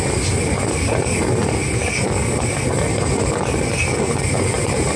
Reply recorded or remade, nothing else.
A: recorded